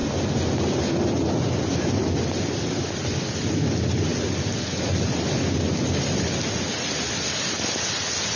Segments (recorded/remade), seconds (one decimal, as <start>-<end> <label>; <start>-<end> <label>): 0.0-8.4 recorded